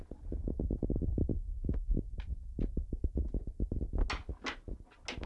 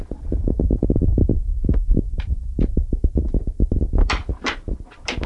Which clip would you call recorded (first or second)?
first